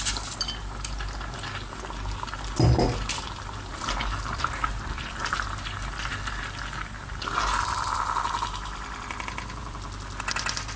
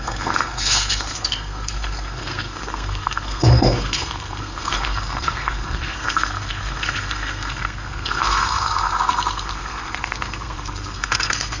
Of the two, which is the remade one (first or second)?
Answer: second